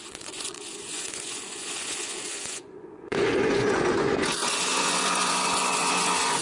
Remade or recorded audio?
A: remade